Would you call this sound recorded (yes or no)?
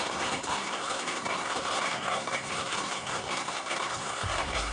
no